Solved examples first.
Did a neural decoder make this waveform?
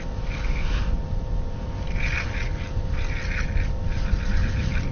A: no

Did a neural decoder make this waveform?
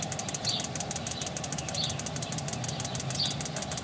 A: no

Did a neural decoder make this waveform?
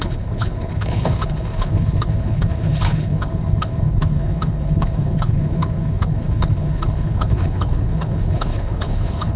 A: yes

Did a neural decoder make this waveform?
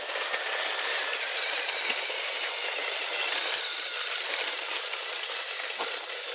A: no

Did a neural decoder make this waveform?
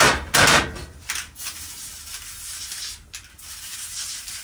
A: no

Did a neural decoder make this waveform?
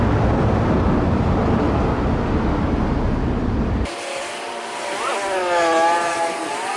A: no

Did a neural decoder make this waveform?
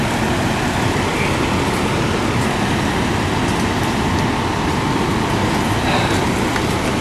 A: no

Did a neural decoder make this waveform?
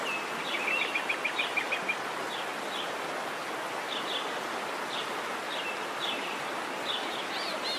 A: no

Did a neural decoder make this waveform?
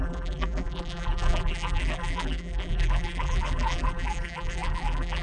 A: yes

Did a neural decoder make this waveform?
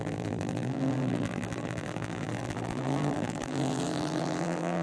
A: yes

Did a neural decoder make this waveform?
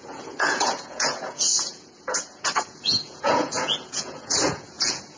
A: yes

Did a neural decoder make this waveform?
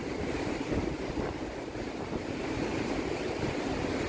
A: no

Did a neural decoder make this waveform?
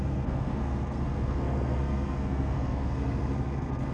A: yes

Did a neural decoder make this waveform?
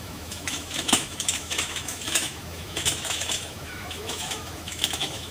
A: yes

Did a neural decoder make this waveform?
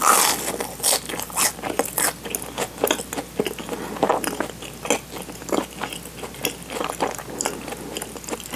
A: no